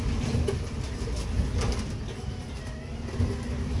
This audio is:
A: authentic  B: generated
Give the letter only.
A